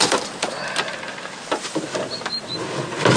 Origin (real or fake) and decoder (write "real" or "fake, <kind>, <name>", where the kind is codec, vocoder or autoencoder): real